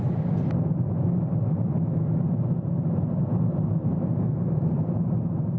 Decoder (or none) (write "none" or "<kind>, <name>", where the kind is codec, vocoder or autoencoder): none